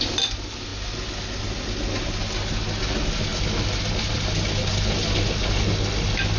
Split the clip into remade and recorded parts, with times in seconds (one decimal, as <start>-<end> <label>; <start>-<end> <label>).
0.0-6.4 recorded